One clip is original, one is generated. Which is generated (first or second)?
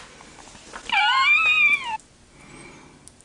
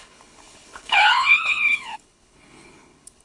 second